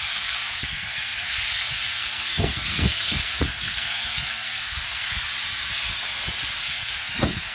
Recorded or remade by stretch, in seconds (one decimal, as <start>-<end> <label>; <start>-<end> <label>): 0.0-5.3 remade; 5.3-6.6 recorded; 6.6-7.5 remade